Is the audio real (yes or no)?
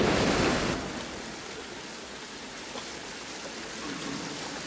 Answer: yes